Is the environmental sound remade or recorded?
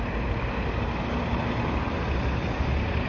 recorded